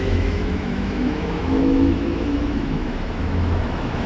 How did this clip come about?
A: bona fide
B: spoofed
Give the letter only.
B